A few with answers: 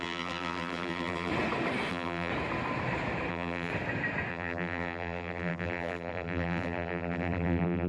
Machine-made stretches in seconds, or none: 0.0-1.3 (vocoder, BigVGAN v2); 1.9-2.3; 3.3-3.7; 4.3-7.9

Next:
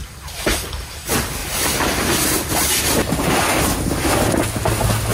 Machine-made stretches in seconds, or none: 1.4-3.4 (vocoder, BigVGAN v2)

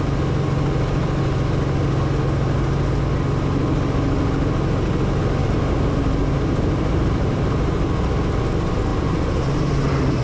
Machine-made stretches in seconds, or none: 5.4-8.4 (vocoder, BigVGAN v2); 8.9-10.2